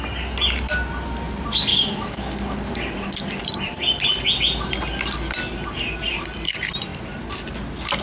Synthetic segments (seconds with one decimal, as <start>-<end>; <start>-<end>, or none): 1.7-2.3